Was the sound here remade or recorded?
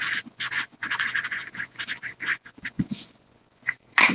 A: remade